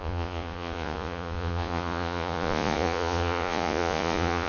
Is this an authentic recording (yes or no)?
no